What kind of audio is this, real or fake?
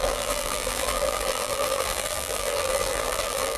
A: fake